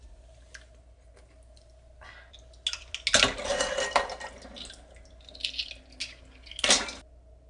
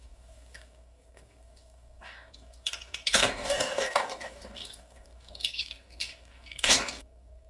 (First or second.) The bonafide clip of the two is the first